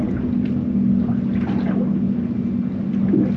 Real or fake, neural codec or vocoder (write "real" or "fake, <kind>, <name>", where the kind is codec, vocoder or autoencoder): real